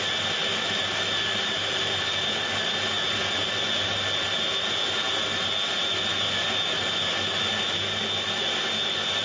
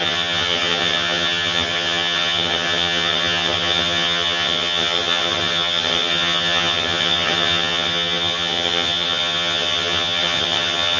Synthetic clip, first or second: second